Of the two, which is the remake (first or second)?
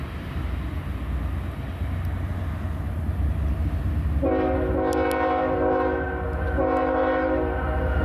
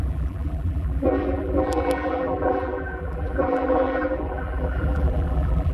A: second